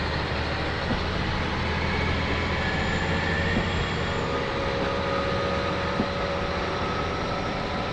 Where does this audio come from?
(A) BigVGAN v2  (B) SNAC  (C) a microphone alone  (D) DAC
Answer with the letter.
C